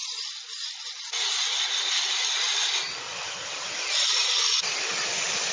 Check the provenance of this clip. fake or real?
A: real